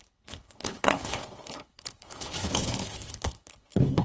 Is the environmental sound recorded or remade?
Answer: remade